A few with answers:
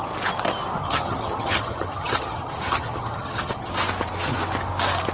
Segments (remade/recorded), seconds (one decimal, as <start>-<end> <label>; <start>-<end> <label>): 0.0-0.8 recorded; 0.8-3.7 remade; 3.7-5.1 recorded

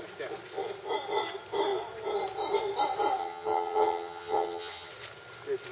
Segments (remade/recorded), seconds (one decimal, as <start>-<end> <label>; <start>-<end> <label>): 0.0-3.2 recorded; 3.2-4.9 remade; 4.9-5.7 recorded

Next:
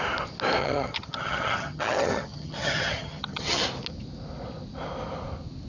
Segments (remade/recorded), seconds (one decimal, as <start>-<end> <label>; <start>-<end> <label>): 0.0-0.6 recorded; 0.6-3.6 remade; 3.6-5.7 recorded

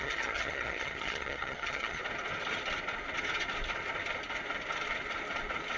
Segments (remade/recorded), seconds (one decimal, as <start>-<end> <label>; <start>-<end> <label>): 0.0-2.0 remade; 2.0-5.8 recorded